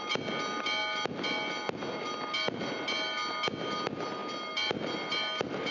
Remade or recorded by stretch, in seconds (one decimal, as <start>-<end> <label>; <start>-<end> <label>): 0.0-5.7 recorded